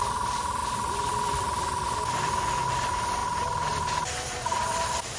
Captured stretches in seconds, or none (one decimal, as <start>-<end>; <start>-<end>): 3.2-4.4